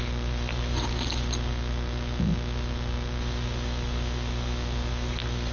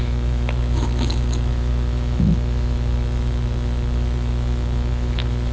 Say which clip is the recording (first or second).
first